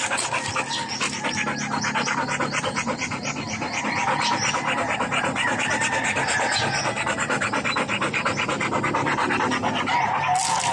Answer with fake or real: real